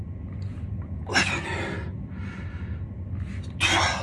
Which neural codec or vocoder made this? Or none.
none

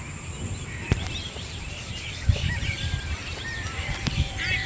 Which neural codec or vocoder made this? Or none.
vocoder, BigVGAN v2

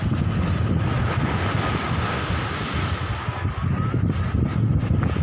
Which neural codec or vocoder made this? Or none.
none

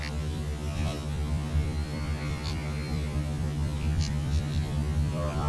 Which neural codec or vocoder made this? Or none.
vocoder, BigVGAN v2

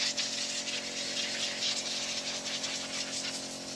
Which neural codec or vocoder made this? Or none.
none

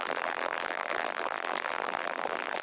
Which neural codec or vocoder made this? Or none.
vocoder, BigVGAN v2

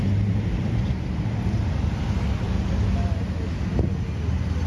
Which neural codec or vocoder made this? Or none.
none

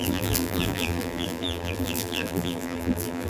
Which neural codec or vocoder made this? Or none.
vocoder, BigVGAN v2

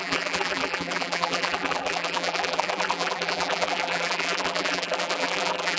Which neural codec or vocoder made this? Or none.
vocoder, BigVGAN v2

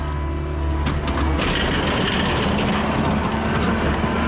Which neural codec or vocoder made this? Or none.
none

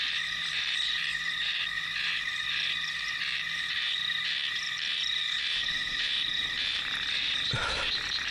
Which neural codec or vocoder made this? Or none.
vocoder, BigVGAN v2